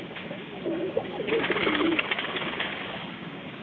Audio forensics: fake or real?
fake